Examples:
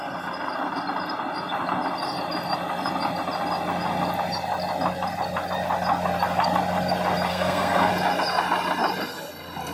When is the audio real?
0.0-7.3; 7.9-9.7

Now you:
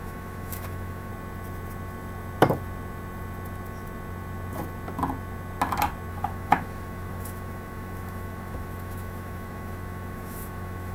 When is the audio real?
1.1-6.1

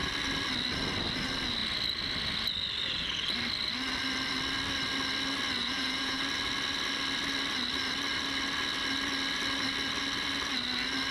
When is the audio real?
0.0-5.6; 6.2-11.1

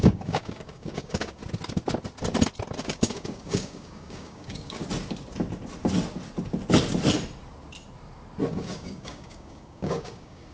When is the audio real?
1.4-2.8; 4.8-8.5

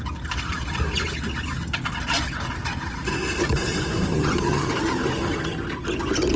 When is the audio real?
0.0-4.1; 4.7-6.4

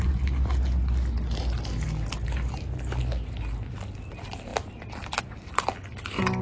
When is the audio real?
0.0-6.4

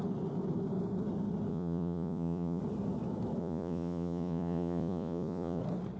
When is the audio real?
0.0-1.5; 2.6-3.4; 5.6-6.0